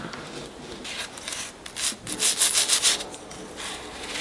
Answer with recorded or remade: recorded